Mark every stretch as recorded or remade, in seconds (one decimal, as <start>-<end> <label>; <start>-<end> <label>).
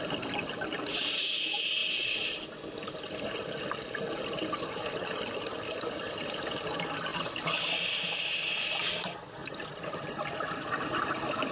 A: 0.0-11.5 recorded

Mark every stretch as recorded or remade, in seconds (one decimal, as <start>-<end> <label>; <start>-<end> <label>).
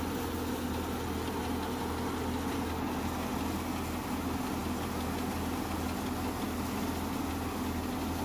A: 0.0-8.2 recorded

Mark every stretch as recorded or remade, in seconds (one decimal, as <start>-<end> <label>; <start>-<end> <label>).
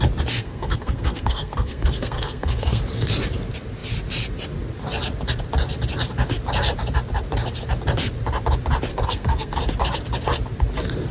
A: 0.0-0.4 recorded; 0.4-2.8 remade; 2.8-8.9 recorded; 8.9-9.6 remade; 9.6-11.1 recorded